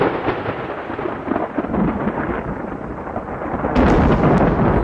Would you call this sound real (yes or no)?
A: yes